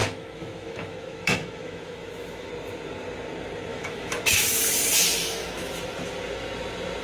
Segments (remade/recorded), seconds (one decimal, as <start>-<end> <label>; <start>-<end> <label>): 0.0-2.5 remade; 2.5-3.7 recorded; 3.7-4.6 remade; 4.6-5.2 recorded; 5.2-5.7 remade; 5.7-7.0 recorded